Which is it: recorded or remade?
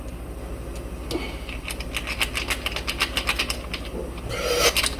recorded